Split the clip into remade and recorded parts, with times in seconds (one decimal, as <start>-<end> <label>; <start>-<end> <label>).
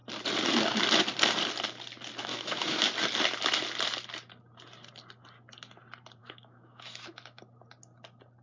0.0-2.3 recorded; 2.3-2.9 remade; 2.9-6.2 recorded; 6.2-7.4 remade; 7.4-8.4 recorded